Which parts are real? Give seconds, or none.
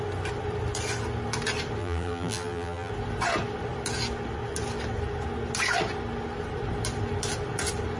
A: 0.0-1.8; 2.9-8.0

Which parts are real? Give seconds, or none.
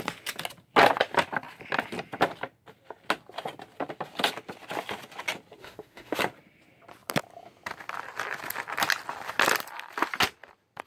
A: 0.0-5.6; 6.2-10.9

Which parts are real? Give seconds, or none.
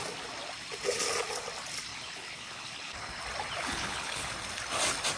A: 0.0-1.9; 3.2-3.6; 4.3-5.2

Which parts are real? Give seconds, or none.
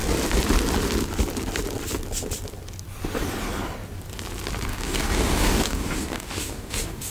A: 0.0-4.7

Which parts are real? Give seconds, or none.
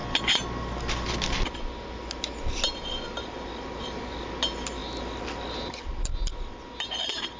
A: 0.0-7.4